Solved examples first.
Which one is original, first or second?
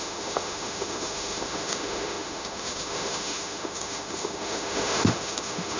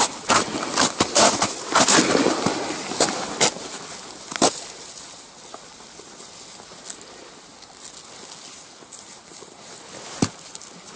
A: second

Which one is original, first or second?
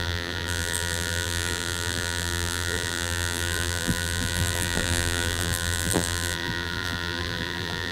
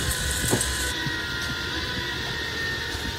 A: second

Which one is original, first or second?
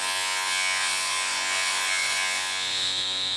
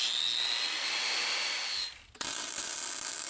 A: second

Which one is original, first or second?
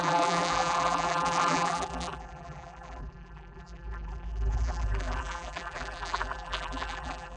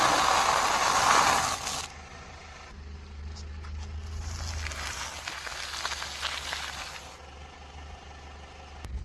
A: second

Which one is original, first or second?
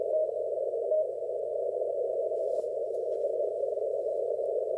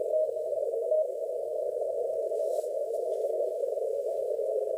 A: first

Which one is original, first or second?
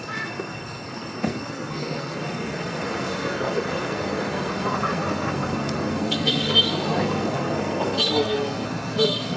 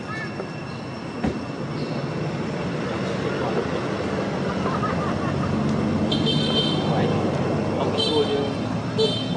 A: second